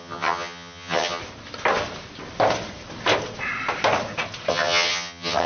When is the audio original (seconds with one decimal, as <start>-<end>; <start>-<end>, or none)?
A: 1.2-4.5